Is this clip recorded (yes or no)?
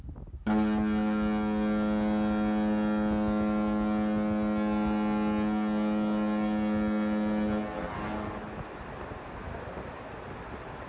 yes